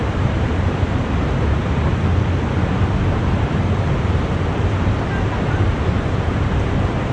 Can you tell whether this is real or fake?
real